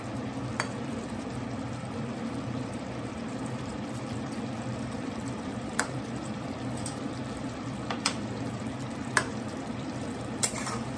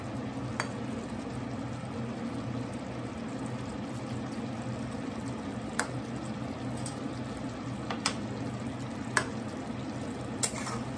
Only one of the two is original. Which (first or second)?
second